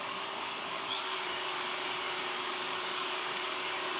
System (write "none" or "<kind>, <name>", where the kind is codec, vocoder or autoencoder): codec, DAC